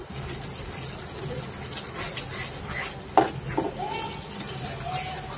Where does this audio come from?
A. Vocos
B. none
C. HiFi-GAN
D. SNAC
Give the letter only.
B